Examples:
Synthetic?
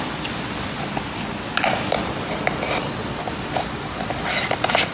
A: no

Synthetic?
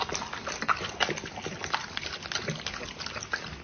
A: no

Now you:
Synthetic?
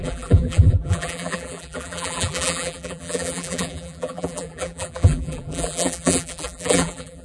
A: yes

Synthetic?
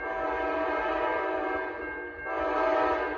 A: no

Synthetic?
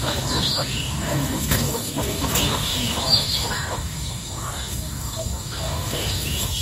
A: yes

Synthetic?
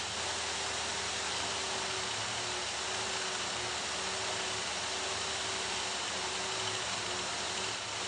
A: no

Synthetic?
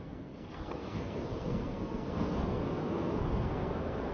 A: yes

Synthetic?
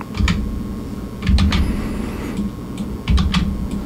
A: no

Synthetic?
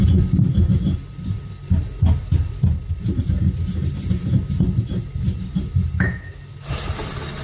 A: no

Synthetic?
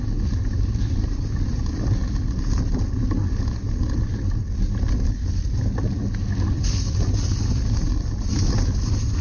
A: no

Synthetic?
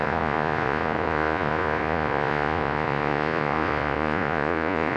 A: yes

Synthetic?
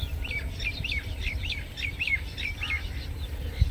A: yes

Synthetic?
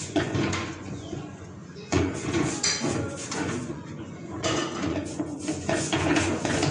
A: yes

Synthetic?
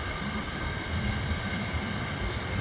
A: no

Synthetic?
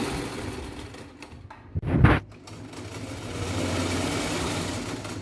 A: no